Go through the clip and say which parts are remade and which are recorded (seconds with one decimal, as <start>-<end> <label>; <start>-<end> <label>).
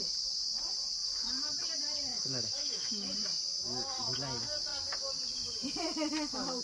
0.0-2.1 recorded; 2.1-2.9 remade; 2.9-6.6 recorded